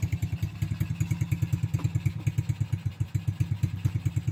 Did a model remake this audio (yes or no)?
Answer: no